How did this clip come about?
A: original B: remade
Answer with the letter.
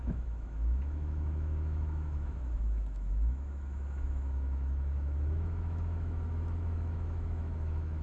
B